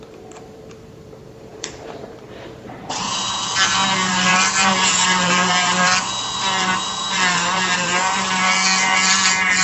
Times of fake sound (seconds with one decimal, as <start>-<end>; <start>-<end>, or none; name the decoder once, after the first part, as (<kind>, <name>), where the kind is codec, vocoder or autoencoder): 0.0-9.6 (vocoder, BigVGAN v2)